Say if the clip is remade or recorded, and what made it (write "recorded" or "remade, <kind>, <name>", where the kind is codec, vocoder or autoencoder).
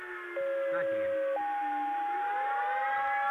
recorded